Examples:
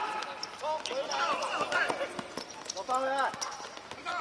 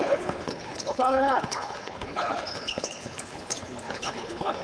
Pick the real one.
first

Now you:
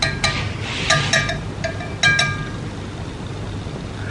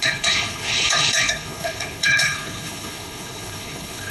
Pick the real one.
first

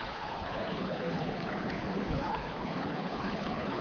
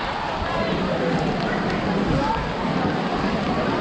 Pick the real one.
second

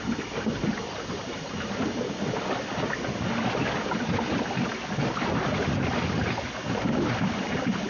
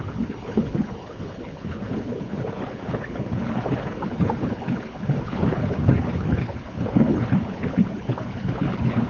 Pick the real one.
first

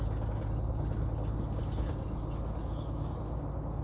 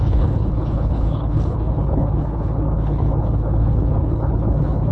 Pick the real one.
first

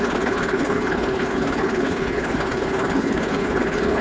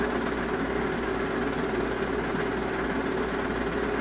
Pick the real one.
second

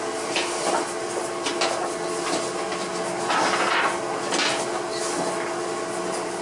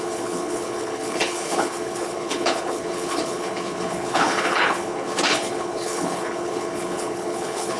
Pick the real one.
first